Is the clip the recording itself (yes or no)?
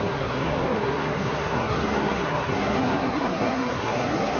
no